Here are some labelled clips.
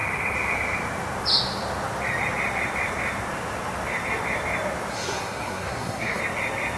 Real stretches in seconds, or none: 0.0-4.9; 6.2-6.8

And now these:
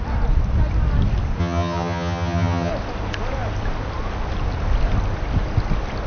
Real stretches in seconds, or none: 0.0-1.4; 2.7-6.1

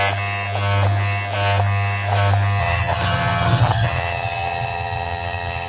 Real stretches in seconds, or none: 0.0-2.6